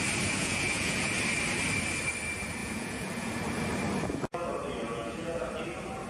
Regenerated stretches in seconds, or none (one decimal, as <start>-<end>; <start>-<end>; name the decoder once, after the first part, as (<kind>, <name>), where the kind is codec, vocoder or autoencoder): 0.4-1.1 (vocoder, Vocos); 2.6-3.3; 4.8-5.4